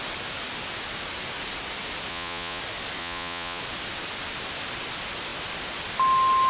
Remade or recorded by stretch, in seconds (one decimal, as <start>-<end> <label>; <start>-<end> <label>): 0.0-2.1 recorded; 2.1-2.6 remade; 2.6-3.0 recorded; 3.0-3.6 remade; 3.6-6.5 recorded